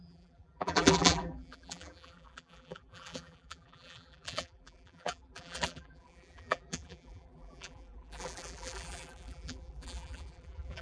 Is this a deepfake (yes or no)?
yes